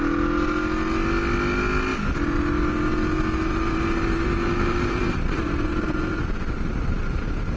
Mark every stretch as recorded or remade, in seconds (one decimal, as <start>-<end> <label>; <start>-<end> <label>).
0.0-3.5 recorded; 3.5-7.6 remade